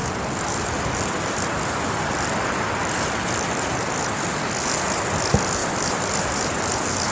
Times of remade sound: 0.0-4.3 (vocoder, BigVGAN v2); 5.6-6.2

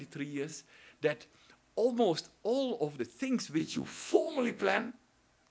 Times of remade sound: 3.6-4.9 (vocoder, WaveNeXt)

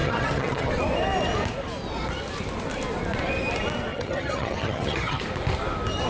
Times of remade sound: 0.0-0.7 (vocoder, HiFi-GAN); 3.9-5.2

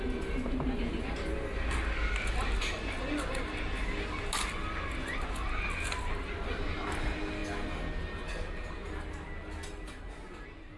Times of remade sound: none

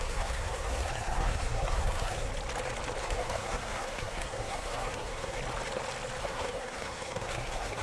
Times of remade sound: 0.0-2.3 (codec, SNAC); 3.0-5.4; 6.2-7.8

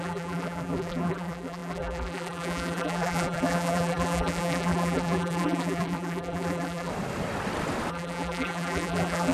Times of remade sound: 0.0-6.9 (vocoder, BigVGAN v2); 7.9-9.3